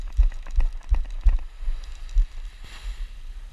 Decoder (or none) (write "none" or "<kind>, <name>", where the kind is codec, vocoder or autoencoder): none